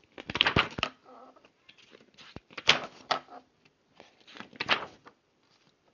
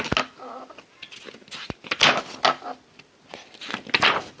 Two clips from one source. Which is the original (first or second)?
second